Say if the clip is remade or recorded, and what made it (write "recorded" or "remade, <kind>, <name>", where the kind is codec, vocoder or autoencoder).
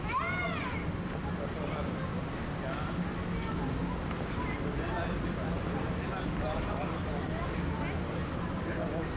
recorded